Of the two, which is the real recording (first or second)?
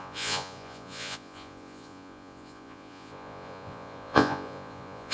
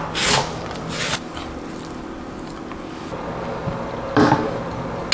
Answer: second